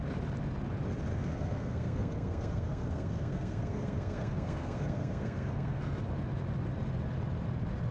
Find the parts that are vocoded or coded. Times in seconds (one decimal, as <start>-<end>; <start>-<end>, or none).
1.1-5.8